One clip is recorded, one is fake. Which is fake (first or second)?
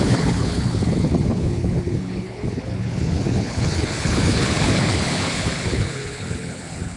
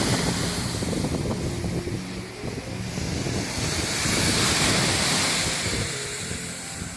first